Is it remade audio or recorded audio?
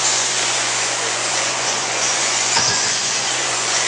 remade